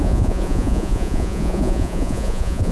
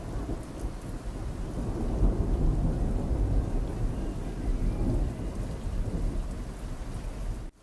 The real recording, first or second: second